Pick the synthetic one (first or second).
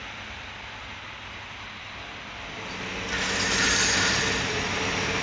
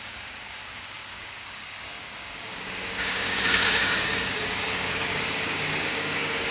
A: second